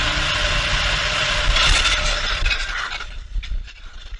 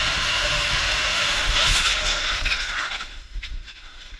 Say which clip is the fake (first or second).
second